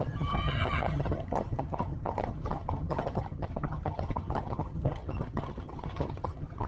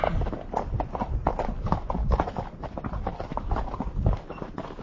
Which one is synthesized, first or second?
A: first